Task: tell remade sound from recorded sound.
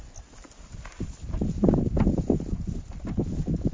recorded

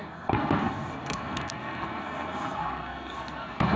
remade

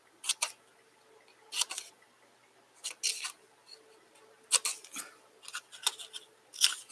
recorded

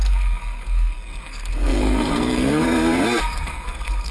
remade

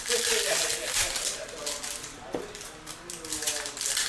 recorded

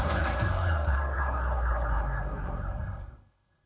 remade